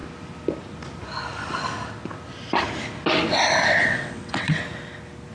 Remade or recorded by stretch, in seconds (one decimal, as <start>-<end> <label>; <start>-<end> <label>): 0.0-3.8 recorded; 3.8-4.6 remade; 4.6-5.3 recorded